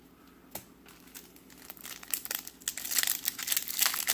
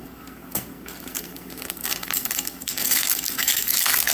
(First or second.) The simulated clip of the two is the second